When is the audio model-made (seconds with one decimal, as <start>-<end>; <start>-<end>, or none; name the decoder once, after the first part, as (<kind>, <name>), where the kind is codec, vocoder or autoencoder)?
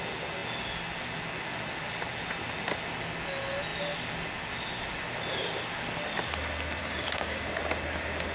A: 6.8-7.6 (codec, DAC)